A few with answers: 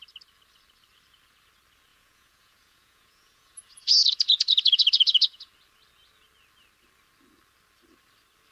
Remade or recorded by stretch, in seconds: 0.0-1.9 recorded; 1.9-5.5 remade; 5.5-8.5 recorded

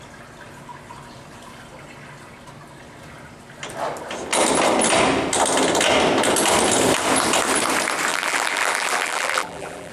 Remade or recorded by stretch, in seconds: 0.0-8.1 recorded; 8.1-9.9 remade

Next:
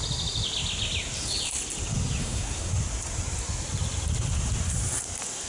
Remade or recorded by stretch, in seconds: 0.0-2.2 recorded; 2.2-2.7 remade; 2.7-5.5 recorded